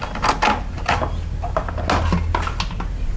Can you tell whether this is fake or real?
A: real